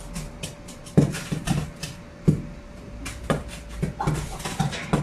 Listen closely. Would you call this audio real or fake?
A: fake